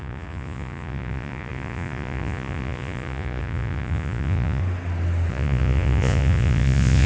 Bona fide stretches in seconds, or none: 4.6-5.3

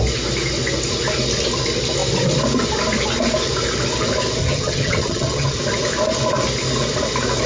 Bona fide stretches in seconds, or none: 0.0-4.4; 5.6-7.5

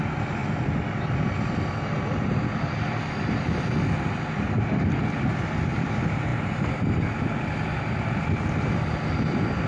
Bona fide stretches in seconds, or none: 0.0-9.7

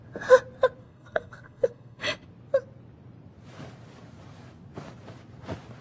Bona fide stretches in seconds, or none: 0.0-0.8; 2.0-5.8

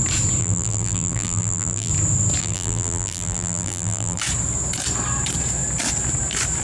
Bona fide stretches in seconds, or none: 0.0-0.4; 1.9-2.4; 4.2-6.6

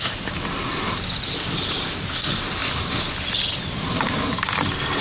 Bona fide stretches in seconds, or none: 0.0-5.0